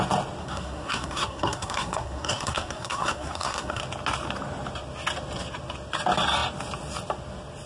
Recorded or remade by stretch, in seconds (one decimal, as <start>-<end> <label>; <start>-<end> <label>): 0.0-0.4 recorded; 0.4-3.8 remade; 3.8-7.7 recorded